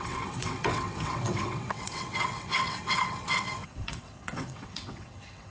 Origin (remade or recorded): remade